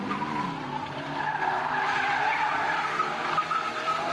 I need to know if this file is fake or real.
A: real